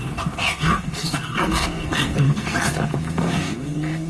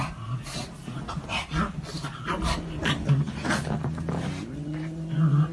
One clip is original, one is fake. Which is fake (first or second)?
first